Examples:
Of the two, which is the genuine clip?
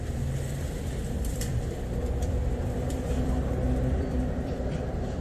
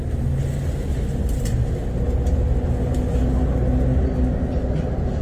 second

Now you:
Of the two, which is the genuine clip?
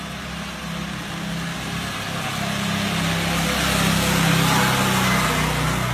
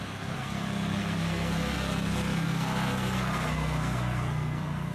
first